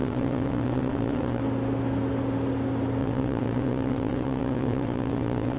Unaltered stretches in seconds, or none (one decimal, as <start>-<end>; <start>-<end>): 1.4-3.0